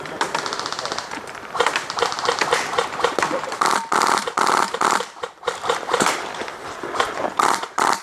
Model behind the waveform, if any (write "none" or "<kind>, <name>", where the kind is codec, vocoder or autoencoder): vocoder, BigVGAN v2